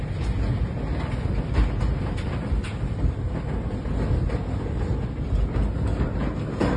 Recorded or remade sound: recorded